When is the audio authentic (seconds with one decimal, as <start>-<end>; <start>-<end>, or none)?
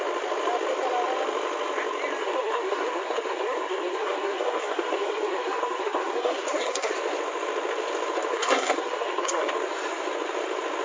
0.0-2.2; 6.9-8.3; 9.5-10.8